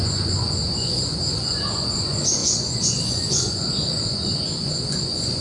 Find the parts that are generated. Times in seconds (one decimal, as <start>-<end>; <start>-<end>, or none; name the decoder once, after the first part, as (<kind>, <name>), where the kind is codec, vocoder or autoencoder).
0.0-5.4 (vocoder, Vocos)